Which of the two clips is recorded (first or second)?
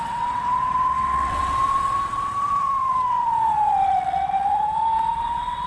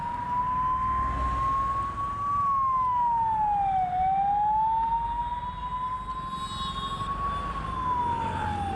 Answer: second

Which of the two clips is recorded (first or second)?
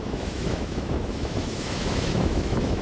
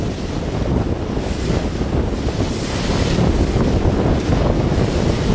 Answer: second